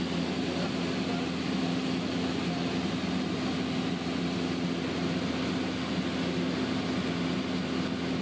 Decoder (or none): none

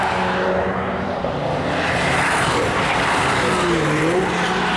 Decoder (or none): none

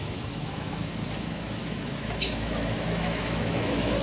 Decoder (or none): autoencoder, DAC-VAE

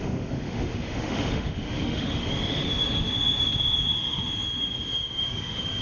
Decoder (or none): autoencoder, DAC-VAE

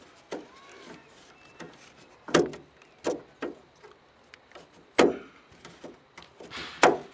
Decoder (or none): none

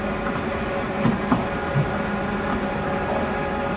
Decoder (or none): none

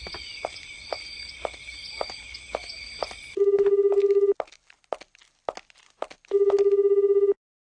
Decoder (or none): none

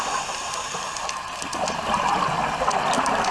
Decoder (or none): none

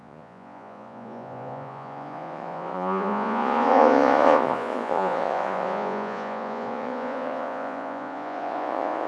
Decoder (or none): vocoder, Vocos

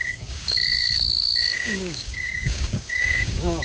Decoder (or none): codec, DAC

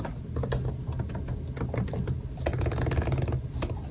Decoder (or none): none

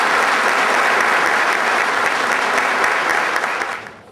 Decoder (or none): none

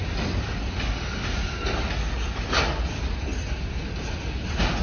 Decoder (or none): none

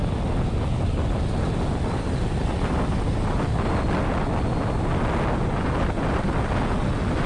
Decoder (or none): none